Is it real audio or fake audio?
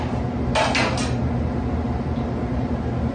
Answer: real